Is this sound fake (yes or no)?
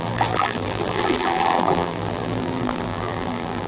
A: yes